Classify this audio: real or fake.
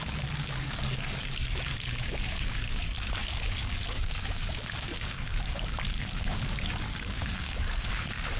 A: fake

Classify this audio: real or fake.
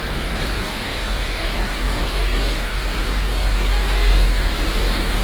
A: fake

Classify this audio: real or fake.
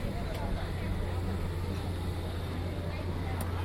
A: real